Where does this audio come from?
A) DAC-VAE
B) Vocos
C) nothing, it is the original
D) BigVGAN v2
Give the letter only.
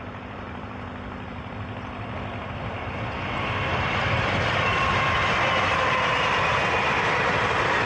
D